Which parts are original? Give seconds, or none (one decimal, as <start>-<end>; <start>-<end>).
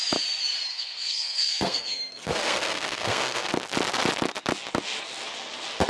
0.0-0.7; 3.5-5.9